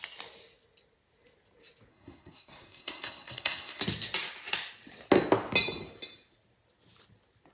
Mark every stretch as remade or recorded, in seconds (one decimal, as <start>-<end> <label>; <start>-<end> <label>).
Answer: 0.0-1.9 recorded; 1.9-3.8 remade; 3.8-7.5 recorded